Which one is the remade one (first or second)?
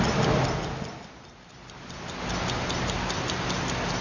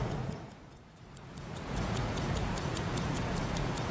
second